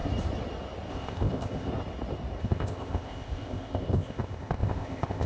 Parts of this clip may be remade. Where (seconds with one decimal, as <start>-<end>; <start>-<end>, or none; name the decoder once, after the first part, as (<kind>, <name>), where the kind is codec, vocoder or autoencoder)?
0.9-1.7 (codec, ZipCodec); 2.4-5.3